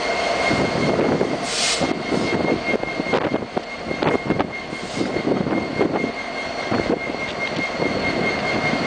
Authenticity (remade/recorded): recorded